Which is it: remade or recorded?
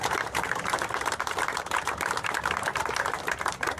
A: remade